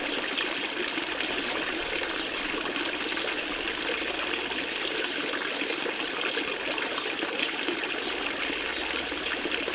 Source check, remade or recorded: recorded